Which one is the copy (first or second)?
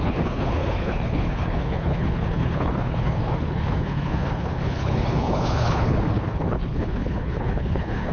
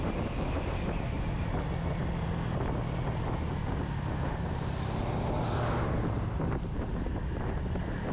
first